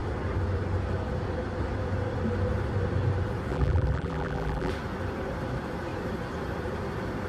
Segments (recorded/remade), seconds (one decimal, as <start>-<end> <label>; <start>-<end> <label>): 0.0-3.5 recorded; 3.5-4.7 remade; 4.7-7.3 recorded